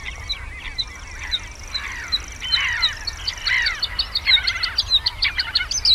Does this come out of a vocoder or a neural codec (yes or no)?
no